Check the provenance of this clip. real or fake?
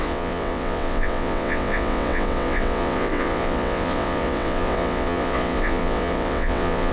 fake